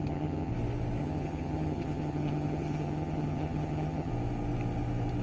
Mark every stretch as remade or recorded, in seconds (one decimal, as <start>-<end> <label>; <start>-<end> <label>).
0.0-0.5 remade; 0.5-1.0 recorded; 1.0-4.1 remade; 4.1-5.2 recorded